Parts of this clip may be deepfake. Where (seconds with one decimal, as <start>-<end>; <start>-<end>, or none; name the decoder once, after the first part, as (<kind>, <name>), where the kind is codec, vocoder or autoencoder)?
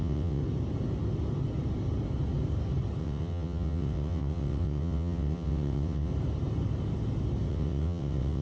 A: 0.0-0.4 (vocoder, WaveNeXt); 3.0-6.1; 7.5-8.4